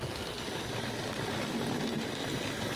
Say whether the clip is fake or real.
real